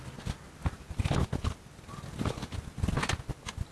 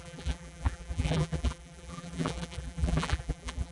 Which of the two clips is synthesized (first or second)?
second